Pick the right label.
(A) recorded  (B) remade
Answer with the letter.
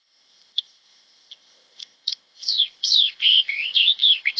B